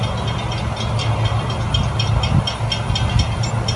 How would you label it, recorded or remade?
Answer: recorded